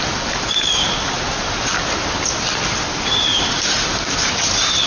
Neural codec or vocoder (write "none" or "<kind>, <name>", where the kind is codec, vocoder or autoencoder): none